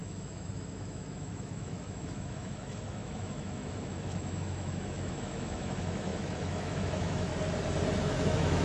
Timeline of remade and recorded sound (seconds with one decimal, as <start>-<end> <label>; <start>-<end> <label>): 0.0-7.3 remade; 7.3-8.0 recorded; 8.0-8.6 remade